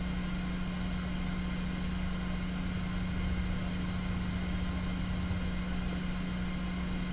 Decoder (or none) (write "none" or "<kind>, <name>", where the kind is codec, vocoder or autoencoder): none